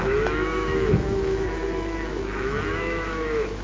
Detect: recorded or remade remade